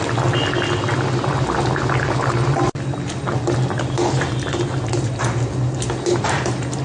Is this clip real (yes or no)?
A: yes